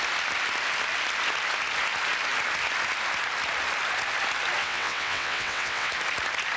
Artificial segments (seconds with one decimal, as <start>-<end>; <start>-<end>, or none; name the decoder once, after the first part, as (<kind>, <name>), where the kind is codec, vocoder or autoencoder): 4.6-5.9 (vocoder, WaveNeXt)